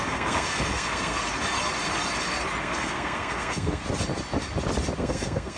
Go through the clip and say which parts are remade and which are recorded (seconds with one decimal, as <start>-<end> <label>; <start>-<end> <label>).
0.0-1.2 remade; 1.2-2.6 recorded; 2.6-3.8 remade; 3.8-5.0 recorded; 5.0-5.6 remade